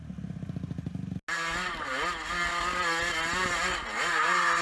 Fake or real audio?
real